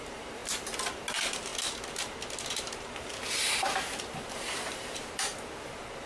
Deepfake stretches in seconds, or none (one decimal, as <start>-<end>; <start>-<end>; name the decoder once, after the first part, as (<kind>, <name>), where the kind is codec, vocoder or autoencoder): 0.0-0.4 (vocoder, BigVGAN v2); 1.1-1.5; 2.6-5.3